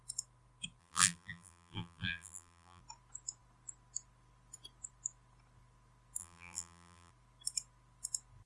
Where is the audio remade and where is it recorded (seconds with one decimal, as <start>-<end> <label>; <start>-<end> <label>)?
0.0-0.8 recorded; 0.8-2.8 remade; 2.8-6.2 recorded; 6.2-7.1 remade; 7.1-8.5 recorded